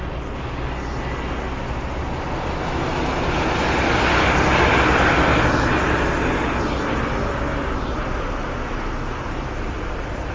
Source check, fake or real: real